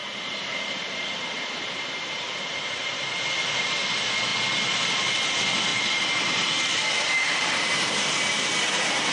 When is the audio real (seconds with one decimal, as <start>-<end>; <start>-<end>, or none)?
3.0-5.7; 8.4-9.1